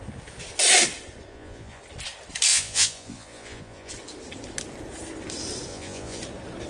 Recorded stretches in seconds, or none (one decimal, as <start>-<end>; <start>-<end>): 0.0-1.3; 1.8-2.5; 3.9-5.7; 6.2-6.7